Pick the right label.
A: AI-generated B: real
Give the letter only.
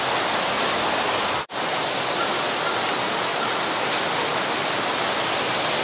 B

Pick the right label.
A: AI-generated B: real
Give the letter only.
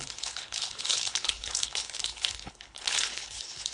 A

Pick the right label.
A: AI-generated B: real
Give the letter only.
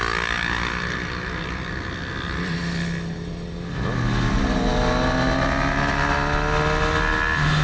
B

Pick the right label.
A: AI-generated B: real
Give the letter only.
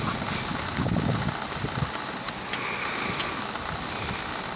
B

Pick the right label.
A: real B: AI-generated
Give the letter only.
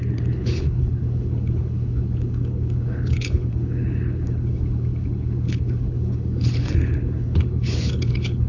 B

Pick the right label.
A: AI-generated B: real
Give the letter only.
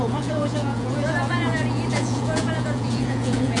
A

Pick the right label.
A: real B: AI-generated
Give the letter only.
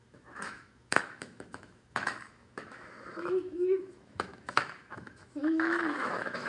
B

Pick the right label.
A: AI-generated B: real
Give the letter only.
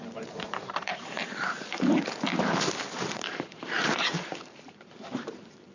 A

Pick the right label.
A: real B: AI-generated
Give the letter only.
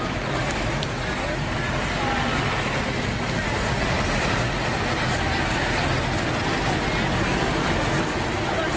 A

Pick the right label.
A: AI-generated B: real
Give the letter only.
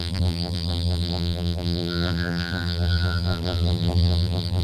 A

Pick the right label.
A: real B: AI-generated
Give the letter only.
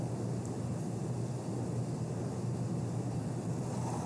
A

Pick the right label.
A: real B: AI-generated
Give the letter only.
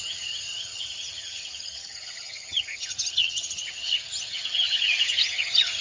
B